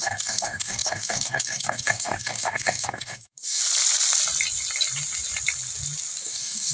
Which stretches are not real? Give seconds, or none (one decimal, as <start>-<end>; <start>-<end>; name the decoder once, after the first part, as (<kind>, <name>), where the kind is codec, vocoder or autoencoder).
0.0-3.6 (codec, DAC); 6.2-6.7